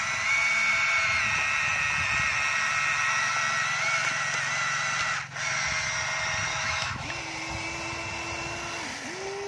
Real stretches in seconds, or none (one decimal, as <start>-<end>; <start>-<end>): 0.0-6.5; 7.1-9.5